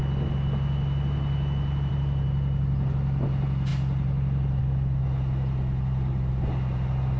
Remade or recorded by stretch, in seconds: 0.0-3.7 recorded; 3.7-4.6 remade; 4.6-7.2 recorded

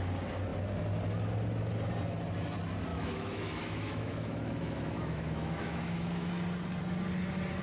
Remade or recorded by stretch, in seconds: 0.0-2.9 recorded; 2.9-6.3 remade; 6.3-7.6 recorded

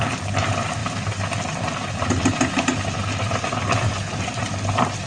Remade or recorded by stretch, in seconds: 0.0-5.1 recorded

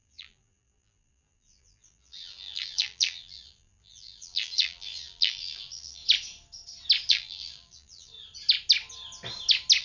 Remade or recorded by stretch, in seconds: 0.0-6.0 remade; 6.0-7.1 recorded; 7.1-8.1 remade; 8.1-9.8 recorded

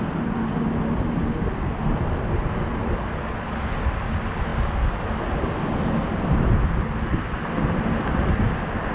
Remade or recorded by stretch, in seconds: 0.0-8.9 recorded

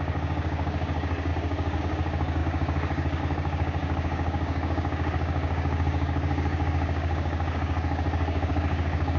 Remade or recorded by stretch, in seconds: 0.0-9.2 remade